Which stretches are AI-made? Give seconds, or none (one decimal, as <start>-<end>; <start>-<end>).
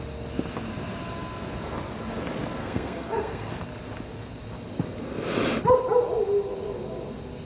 2.6-3.5